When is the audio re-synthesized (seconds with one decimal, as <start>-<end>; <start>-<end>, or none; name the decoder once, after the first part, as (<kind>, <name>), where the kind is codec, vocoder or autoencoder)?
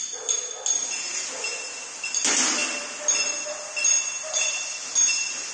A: none